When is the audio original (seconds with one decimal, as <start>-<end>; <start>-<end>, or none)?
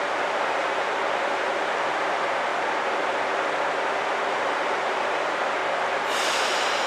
2.5-4.3; 5.6-6.4